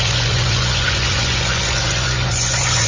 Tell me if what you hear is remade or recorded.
remade